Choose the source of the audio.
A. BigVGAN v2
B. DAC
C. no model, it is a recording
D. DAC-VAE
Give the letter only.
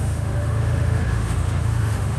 D